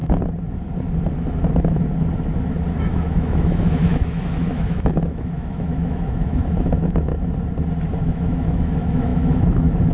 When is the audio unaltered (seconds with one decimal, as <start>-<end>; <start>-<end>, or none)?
0.0-2.8; 7.1-8.0